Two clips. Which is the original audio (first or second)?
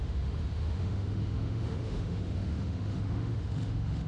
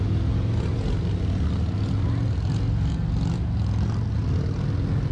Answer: second